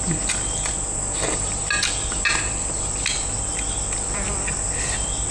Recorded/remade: recorded